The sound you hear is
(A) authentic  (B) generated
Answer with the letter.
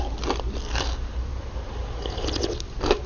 A